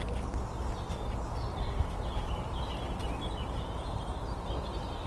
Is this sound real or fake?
real